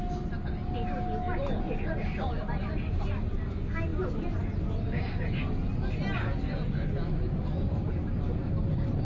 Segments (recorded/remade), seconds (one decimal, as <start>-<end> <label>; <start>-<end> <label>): 0.0-9.0 recorded